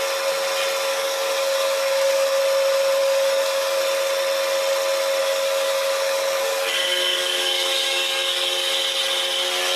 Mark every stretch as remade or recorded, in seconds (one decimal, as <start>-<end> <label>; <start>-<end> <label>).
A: 0.0-0.9 recorded; 0.9-2.4 remade; 2.4-3.0 recorded; 3.0-3.8 remade; 3.8-5.2 recorded; 5.2-8.7 remade; 8.7-9.8 recorded